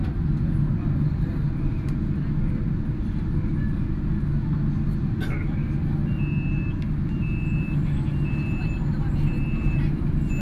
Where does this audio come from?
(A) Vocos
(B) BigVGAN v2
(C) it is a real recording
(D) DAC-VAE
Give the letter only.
C